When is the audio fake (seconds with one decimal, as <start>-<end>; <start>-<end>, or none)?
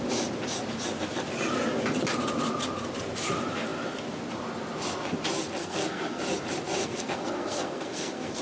5.6-6.2; 6.8-8.4